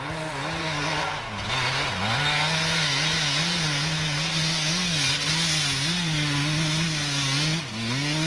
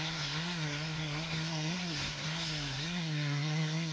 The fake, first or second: second